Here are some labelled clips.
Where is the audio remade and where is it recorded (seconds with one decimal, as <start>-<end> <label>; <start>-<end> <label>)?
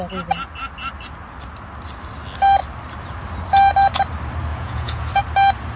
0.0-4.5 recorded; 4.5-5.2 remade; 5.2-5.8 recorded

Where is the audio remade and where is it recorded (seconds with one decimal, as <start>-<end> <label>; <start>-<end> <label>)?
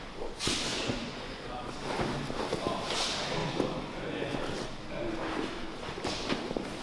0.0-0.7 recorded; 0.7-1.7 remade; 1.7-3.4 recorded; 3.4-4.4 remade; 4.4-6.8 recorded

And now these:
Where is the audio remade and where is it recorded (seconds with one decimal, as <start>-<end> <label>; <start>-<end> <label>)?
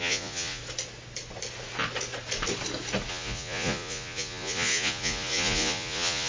0.0-0.6 remade; 0.6-3.1 recorded; 3.1-6.3 remade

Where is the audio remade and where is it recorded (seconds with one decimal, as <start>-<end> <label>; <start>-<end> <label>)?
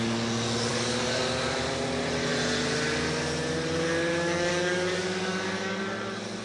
0.0-0.7 recorded; 0.7-1.2 remade; 1.2-4.1 recorded; 4.1-5.8 remade; 5.8-6.4 recorded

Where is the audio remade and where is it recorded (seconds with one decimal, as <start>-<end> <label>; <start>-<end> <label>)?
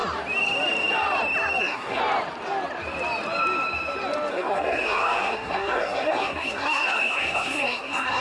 0.0-1.6 recorded; 1.6-2.0 remade; 2.0-4.3 recorded; 4.3-8.2 remade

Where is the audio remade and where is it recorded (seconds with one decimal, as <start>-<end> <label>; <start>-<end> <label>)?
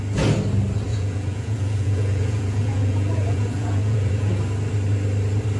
0.0-0.9 recorded; 0.9-4.3 remade; 4.3-5.6 recorded